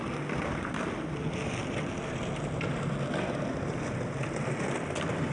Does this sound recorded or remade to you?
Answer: recorded